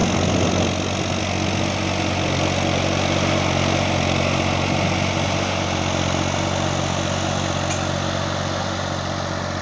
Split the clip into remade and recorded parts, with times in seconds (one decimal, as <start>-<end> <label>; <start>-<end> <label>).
0.0-9.6 recorded